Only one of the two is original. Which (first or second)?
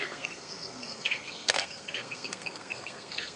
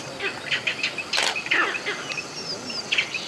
second